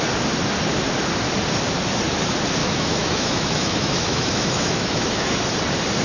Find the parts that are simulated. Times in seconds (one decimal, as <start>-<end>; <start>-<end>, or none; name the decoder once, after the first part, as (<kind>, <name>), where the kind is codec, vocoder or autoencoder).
2.6-5.4 (autoencoder, DAC-VAE)